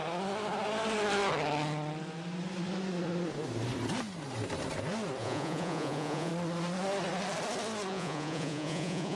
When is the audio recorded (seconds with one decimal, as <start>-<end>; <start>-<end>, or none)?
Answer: 0.0-5.2; 6.3-7.9